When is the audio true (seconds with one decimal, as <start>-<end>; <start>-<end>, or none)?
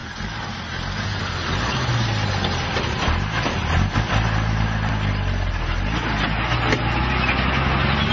0.0-8.1